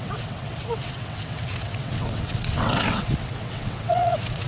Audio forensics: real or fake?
fake